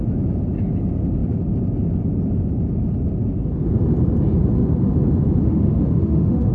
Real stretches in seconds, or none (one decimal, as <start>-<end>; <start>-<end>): 0.0-5.4

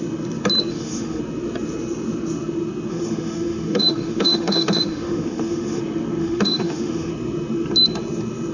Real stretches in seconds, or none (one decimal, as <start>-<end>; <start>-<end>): 0.0-0.7; 1.2-2.9; 5.8-6.2; 7.1-8.5

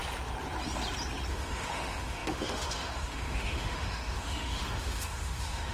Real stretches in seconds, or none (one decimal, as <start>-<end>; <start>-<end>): 0.0-1.3

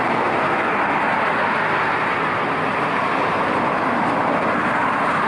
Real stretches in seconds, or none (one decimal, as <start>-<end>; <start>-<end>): 0.0-5.3

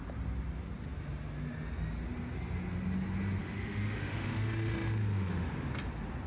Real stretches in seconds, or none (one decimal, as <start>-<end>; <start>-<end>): 0.0-3.4; 5.3-6.3

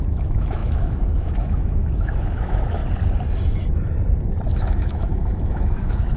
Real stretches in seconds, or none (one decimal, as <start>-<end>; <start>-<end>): 2.8-4.5

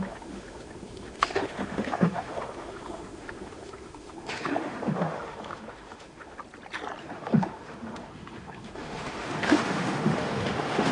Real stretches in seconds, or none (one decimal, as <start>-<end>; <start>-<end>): 6.4-7.0

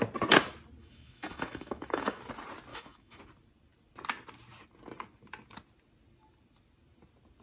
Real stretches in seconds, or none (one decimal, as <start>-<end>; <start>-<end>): 0.0-0.8; 2.2-2.7; 3.2-7.4